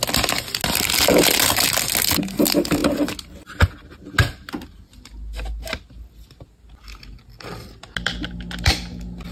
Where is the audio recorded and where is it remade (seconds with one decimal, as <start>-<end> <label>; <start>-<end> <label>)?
0.0-9.3 recorded